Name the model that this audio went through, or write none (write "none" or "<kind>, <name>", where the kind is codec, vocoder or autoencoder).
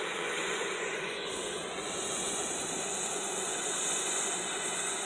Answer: vocoder, Vocos